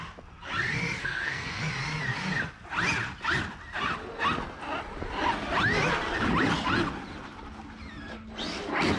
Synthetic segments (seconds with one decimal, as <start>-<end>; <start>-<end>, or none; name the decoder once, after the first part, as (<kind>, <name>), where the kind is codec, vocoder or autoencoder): 1.0-1.6 (codec, SNAC)